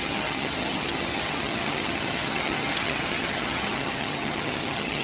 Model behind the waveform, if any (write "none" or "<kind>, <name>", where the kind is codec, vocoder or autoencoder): vocoder, HiFi-GAN